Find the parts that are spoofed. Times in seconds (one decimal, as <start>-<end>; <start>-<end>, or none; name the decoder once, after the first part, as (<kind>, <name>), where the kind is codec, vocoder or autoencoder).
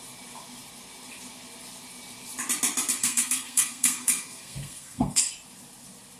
3.0-5.3 (codec, SNAC)